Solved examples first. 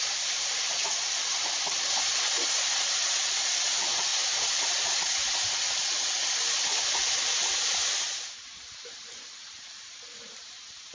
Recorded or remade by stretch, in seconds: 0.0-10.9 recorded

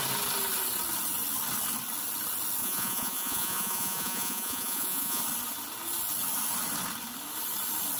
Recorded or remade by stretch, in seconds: 0.0-2.6 recorded; 2.6-5.2 remade; 5.2-8.0 recorded

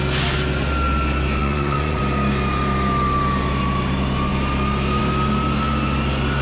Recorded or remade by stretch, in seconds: 0.0-1.4 recorded; 1.4-2.0 remade; 2.0-6.4 recorded

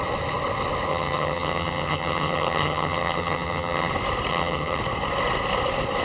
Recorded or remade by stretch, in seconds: 0.0-0.9 recorded; 0.9-3.9 remade; 3.9-4.3 recorded; 4.3-4.8 remade; 4.8-6.0 recorded

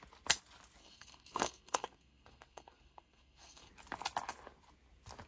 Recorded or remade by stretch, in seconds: 0.0-0.8 recorded; 0.8-3.7 remade; 3.7-5.3 recorded

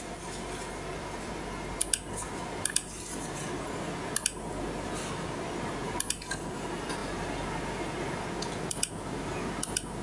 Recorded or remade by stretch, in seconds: 0.0-10.0 recorded

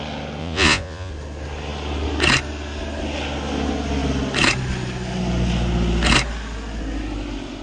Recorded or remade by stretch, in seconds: 0.0-0.4 recorded; 0.4-1.1 remade; 1.1-7.6 recorded

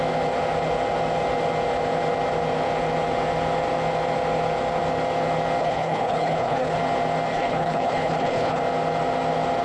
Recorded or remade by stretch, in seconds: 0.0-5.6 recorded; 5.6-6.8 remade; 6.8-7.3 recorded; 7.3-8.6 remade; 8.6-9.6 recorded